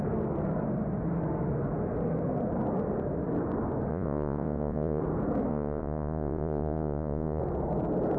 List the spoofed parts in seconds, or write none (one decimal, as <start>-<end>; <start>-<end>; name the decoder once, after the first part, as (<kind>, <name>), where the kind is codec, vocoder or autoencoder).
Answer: 3.9-5.0 (vocoder, Vocos); 5.5-7.4